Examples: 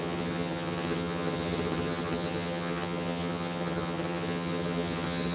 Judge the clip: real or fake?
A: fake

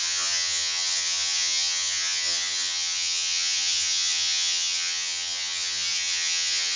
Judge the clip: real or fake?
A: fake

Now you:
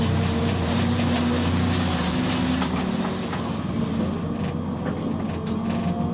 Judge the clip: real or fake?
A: real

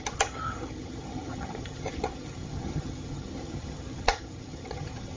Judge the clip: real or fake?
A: fake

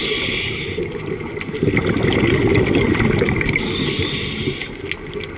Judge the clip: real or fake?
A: real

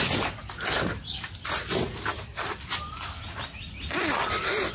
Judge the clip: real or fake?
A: real